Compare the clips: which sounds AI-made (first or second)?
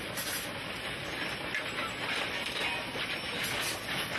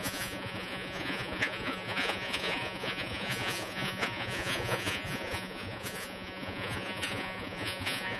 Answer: second